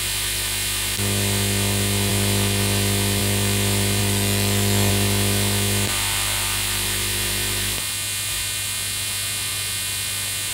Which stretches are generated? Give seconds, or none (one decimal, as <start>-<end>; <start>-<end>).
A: 4.0-4.9